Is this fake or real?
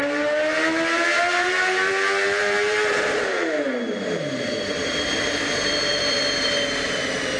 fake